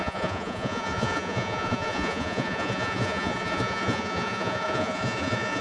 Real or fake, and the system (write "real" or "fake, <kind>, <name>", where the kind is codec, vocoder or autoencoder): fake, vocoder, Vocos